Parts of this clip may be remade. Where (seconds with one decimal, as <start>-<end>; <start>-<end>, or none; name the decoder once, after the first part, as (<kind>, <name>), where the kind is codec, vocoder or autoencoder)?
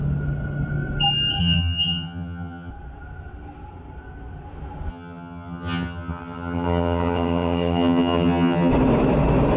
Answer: 1.4-2.7 (vocoder, HiFi-GAN); 4.9-8.7